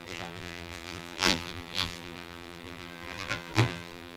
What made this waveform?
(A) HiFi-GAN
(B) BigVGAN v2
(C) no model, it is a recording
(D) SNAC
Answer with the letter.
B